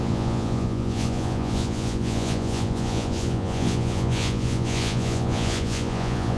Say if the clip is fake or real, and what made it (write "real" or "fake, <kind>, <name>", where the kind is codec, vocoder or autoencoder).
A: fake, vocoder, Vocos